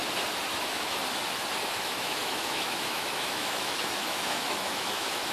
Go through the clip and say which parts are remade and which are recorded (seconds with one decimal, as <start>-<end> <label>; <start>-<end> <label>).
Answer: 0.0-0.5 recorded; 0.5-1.0 remade; 1.0-1.7 recorded; 1.7-5.3 remade

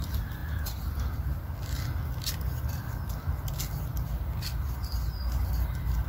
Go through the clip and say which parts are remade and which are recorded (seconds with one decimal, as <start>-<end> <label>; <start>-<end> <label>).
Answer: 0.0-6.1 recorded

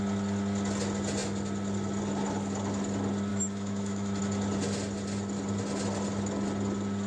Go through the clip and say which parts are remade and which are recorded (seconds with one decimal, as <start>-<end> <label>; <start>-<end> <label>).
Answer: 0.0-3.3 recorded; 3.3-4.2 remade; 4.2-7.1 recorded

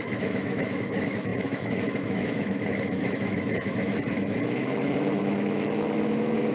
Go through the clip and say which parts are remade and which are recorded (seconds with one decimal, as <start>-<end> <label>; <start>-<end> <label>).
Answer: 0.0-6.5 remade